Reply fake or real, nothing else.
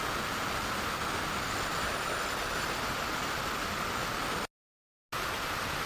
real